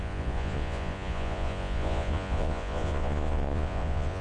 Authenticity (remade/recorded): remade